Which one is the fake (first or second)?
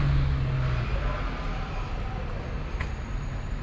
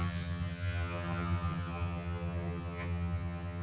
second